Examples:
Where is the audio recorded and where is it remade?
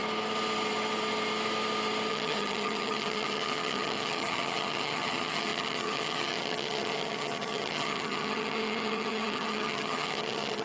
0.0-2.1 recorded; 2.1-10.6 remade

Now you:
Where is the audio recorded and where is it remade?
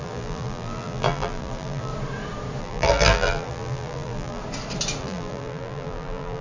0.0-1.9 remade; 1.9-2.6 recorded; 2.6-4.4 remade; 4.4-5.0 recorded; 5.0-6.4 remade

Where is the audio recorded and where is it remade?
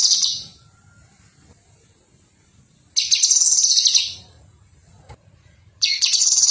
0.0-0.5 remade; 0.5-4.0 recorded; 4.0-6.5 remade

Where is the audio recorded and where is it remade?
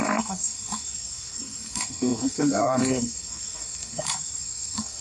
0.0-5.0 remade